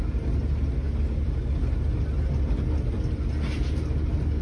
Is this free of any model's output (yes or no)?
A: yes